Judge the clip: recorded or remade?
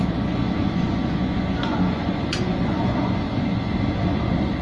remade